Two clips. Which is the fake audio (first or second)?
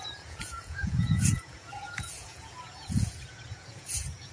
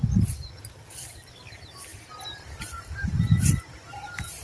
first